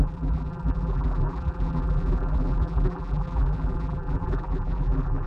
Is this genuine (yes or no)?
no